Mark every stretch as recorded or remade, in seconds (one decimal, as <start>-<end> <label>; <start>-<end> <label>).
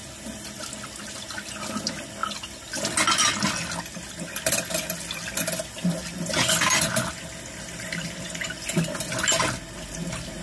0.0-10.4 recorded